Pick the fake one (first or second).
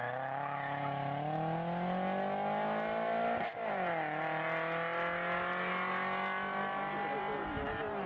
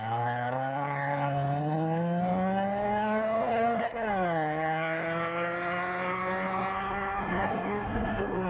second